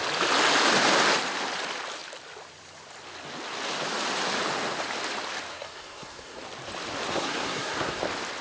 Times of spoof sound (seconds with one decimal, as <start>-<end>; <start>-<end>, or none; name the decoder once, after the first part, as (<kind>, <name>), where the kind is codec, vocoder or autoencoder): 5.5-6.4 (codec, SNAC); 7.1-8.0